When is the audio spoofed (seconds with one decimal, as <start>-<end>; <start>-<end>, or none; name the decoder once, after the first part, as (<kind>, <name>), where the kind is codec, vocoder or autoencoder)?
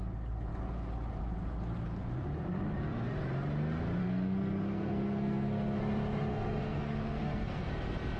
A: 4.0-5.8 (codec, SNAC); 6.3-7.7